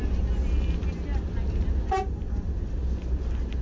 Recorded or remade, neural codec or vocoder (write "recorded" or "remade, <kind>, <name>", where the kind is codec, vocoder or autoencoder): recorded